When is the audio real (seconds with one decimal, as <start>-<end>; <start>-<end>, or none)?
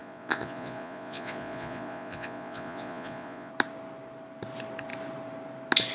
3.5-5.9